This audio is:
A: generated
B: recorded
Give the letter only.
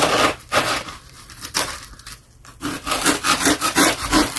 A